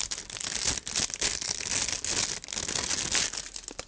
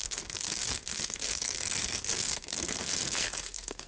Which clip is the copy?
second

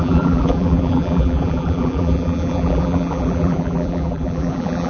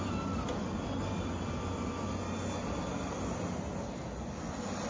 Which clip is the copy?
first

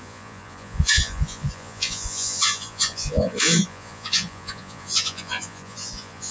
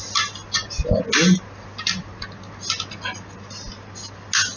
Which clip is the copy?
first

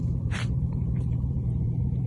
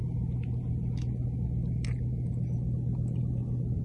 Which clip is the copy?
first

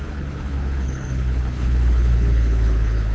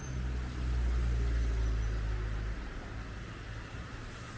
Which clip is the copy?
first